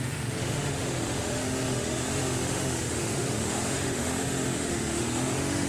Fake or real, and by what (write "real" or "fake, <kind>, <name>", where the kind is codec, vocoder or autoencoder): fake, autoencoder, DAC-VAE